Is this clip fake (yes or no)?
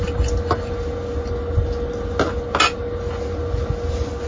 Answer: no